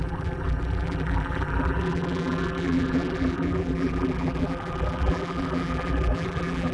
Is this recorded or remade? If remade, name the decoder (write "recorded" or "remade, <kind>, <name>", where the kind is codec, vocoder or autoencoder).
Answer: remade, vocoder, BigVGAN v2